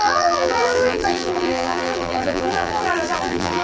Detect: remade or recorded remade